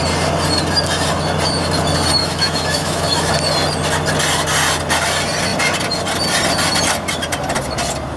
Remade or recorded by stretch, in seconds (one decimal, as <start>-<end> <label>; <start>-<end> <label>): 0.0-2.2 recorded; 2.2-3.3 remade; 3.3-8.2 recorded